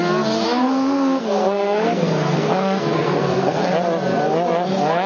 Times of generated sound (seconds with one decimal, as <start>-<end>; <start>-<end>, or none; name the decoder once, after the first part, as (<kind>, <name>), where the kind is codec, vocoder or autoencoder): 0.6-3.7 (codec, SNAC)